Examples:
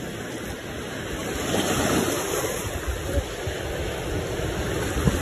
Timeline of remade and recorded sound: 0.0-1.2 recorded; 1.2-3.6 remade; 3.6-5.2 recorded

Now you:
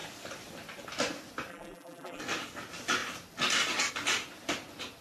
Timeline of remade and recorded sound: 0.0-1.5 recorded; 1.5-2.2 remade; 2.2-5.0 recorded

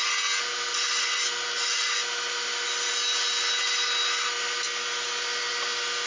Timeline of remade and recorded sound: 0.0-6.1 recorded